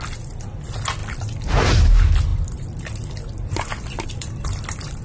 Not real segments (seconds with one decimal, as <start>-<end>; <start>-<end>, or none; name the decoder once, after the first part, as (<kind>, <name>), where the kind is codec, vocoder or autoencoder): 1.0-1.6 (vocoder, BigVGAN v2); 2.3-5.0